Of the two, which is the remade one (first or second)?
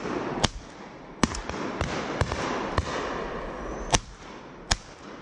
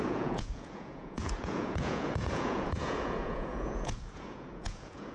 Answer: second